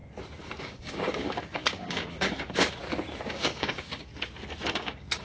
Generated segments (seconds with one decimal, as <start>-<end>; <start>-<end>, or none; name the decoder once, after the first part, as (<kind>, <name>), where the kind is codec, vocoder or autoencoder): 0.6-2.8 (codec, DAC); 3.3-4.1; 4.7-5.2